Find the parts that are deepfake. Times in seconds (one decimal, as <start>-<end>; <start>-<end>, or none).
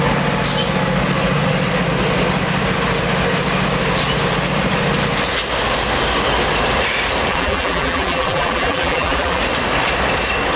7.3-9.4